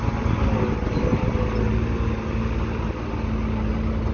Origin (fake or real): real